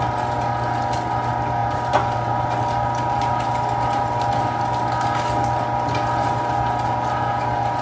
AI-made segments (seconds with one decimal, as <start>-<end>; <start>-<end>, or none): 1.6-3.5